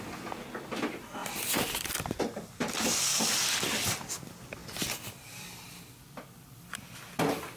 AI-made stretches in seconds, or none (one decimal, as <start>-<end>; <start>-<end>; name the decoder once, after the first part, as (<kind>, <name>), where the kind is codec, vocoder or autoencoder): 1.2-4.1 (vocoder, BigVGAN v2); 4.6-7.0